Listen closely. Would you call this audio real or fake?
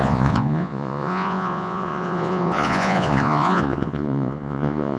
fake